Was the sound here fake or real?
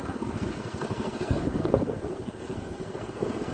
fake